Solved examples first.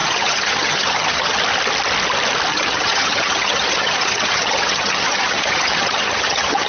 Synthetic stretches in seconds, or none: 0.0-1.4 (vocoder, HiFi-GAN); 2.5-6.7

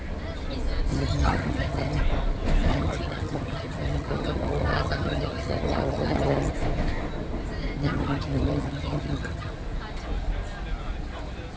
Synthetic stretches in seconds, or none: 0.9-2.0 (vocoder, HiFi-GAN); 2.7-6.5; 7.8-9.5

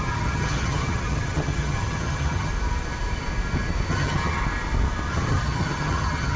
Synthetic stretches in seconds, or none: 0.0-2.5 (vocoder, HiFi-GAN); 3.9-4.4; 5.1-6.4

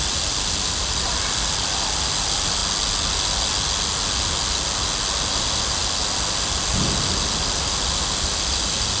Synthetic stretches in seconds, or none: none

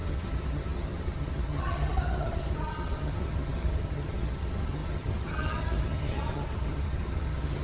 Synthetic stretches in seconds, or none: 0.0-7.6 (vocoder, HiFi-GAN)

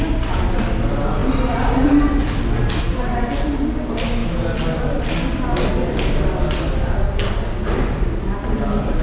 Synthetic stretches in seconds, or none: none

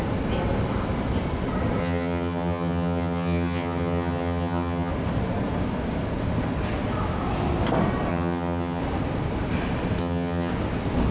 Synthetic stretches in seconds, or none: 1.8-4.9 (vocoder, HiFi-GAN); 8.1-8.8; 10.0-10.5